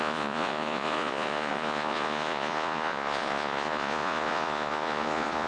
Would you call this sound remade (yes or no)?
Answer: yes